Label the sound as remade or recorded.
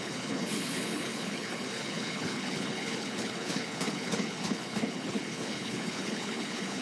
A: remade